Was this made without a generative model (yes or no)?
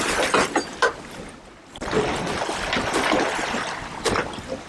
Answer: yes